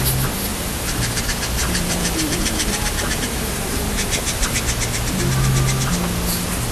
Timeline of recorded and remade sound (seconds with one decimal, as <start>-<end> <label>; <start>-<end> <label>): 0.0-0.5 recorded; 0.5-1.2 remade; 1.2-1.6 recorded; 1.6-4.6 remade; 4.6-6.7 recorded